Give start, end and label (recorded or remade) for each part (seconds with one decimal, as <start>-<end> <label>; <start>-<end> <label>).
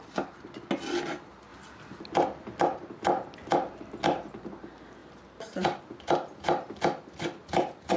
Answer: 0.0-5.0 recorded; 5.0-5.9 remade; 5.9-7.4 recorded; 7.4-8.0 remade